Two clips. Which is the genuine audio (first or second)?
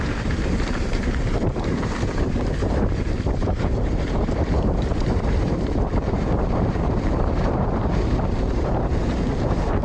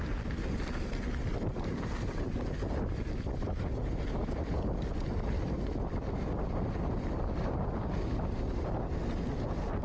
second